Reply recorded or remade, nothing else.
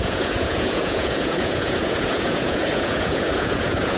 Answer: remade